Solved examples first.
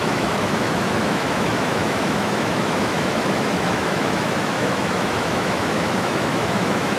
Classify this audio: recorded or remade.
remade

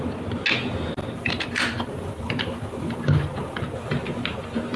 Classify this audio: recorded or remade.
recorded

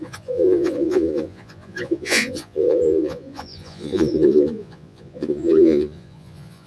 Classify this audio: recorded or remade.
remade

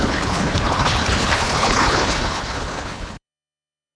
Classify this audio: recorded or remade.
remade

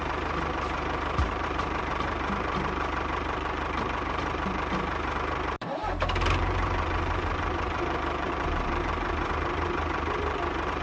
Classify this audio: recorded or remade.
remade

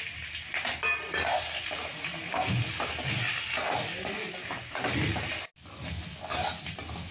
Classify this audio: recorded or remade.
recorded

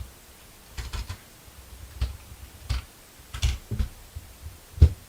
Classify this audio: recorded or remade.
recorded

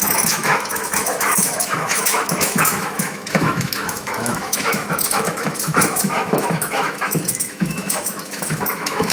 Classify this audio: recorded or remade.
remade